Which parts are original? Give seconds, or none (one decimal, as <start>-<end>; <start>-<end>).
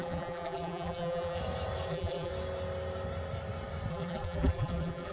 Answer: 1.4-1.9; 2.3-3.9